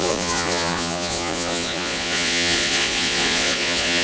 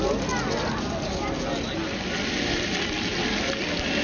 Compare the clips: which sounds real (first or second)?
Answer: second